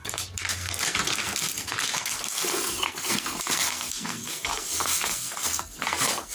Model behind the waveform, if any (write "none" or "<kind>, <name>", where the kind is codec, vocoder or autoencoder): codec, SNAC